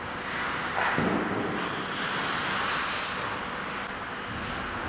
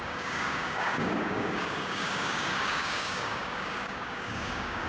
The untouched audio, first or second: first